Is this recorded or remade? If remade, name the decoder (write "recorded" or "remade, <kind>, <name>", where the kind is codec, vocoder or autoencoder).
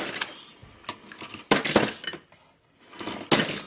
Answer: recorded